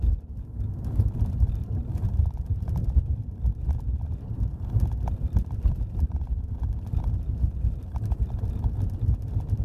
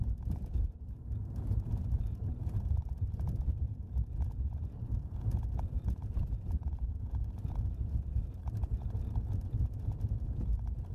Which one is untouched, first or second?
first